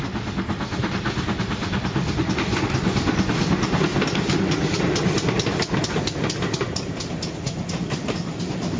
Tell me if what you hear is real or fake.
real